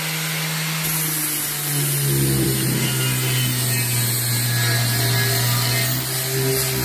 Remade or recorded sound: recorded